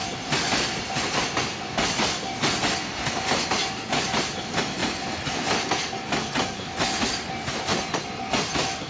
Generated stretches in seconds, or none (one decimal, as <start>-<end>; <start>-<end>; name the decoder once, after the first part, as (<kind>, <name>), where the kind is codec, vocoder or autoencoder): 0.0-1.1 (vocoder, BigVGAN v2)